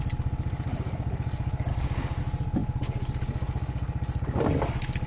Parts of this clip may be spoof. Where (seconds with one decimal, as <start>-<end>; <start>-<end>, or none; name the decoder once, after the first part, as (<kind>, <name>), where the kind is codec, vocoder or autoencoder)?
1.7-2.2 (codec, DAC)